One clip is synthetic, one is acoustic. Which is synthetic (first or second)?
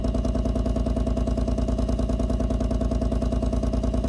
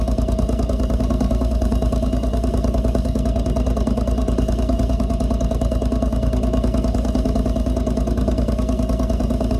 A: second